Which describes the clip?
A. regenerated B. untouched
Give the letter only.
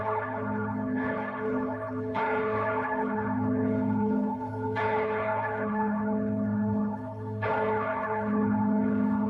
A